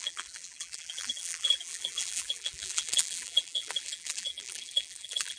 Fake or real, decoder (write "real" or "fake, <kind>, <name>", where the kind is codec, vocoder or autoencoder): fake, vocoder, BigVGAN v2